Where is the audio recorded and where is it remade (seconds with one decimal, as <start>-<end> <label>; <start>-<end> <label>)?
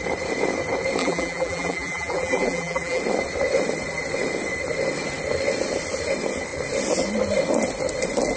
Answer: 0.0-1.0 recorded; 1.0-3.0 remade; 3.0-8.4 recorded